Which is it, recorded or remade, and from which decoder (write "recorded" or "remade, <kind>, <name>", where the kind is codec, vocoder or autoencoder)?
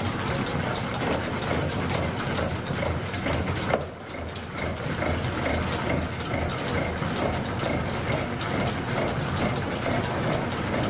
recorded